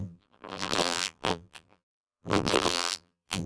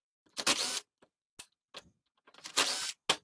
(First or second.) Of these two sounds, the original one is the second